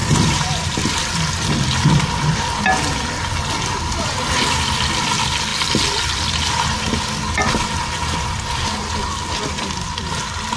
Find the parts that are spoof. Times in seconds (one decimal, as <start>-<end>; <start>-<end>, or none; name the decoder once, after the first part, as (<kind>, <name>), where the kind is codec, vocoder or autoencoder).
none